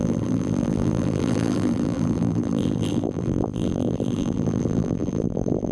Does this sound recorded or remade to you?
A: remade